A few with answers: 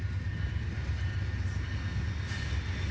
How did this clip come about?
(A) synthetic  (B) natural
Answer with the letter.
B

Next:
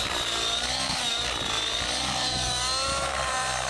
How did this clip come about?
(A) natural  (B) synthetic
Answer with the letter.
A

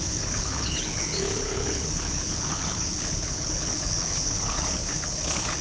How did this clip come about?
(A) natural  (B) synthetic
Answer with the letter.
B